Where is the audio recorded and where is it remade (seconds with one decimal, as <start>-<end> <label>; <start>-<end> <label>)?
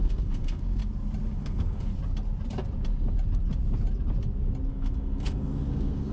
0.0-0.8 remade; 0.8-1.4 recorded; 1.4-1.9 remade; 1.9-4.7 recorded; 4.7-6.1 remade